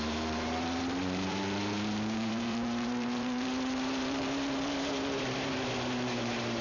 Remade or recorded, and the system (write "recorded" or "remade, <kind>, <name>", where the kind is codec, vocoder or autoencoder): remade, vocoder, BigVGAN v2